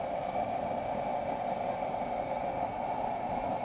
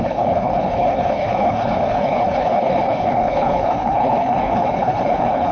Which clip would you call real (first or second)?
first